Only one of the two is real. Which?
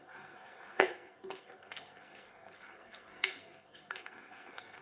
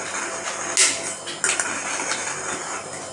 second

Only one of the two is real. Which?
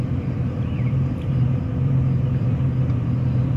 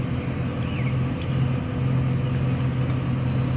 second